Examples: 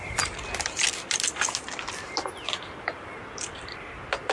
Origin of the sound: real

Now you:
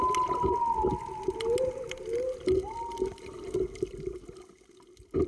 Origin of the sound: real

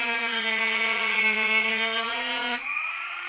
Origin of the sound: fake